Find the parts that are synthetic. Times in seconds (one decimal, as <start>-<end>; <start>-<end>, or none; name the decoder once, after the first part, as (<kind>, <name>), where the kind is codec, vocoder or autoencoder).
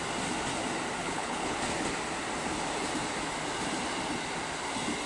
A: 1.0-1.6 (codec, HILCodec)